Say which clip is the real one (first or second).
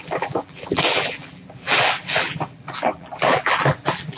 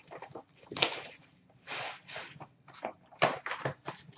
second